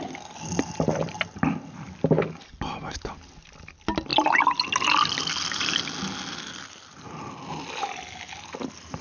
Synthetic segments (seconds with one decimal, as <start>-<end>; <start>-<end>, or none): none